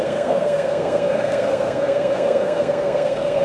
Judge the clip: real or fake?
fake